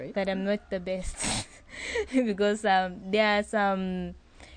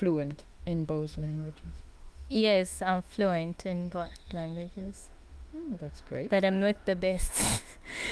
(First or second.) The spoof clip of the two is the second